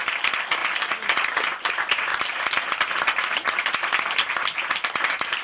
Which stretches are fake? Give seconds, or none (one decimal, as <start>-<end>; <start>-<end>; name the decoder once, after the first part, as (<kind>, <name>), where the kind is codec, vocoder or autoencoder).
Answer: none